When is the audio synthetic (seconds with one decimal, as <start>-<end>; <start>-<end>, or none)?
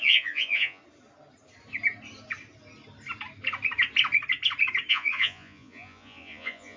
0.0-0.8; 4.9-6.8